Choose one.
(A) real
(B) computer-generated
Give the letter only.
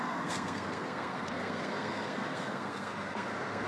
B